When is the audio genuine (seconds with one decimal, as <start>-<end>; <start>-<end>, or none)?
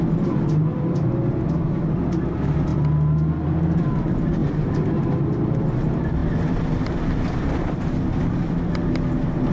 0.0-9.5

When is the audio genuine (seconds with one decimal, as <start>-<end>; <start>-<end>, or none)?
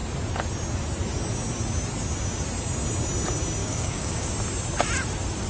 0.0-3.6; 4.3-5.5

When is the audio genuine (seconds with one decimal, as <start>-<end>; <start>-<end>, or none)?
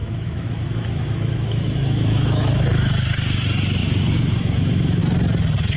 2.9-3.8; 5.0-5.8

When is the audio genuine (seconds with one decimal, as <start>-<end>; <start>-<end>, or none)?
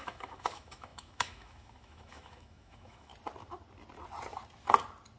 3.1-5.2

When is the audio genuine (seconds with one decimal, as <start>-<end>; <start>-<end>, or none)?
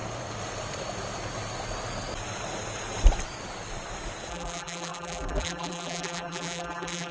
0.0-4.3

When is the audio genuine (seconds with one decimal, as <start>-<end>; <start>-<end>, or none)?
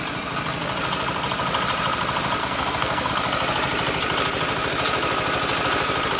0.0-2.4; 3.1-6.2